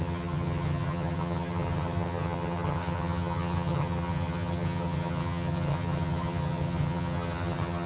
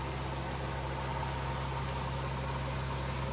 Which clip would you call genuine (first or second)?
second